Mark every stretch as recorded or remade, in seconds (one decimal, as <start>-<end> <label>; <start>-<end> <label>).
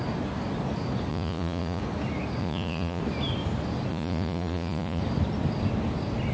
0.0-1.1 recorded; 1.1-1.8 remade; 1.8-2.4 recorded; 2.4-3.0 remade; 3.0-3.9 recorded; 3.9-5.0 remade; 5.0-6.3 recorded